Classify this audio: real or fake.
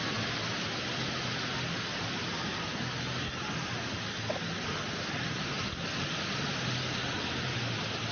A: real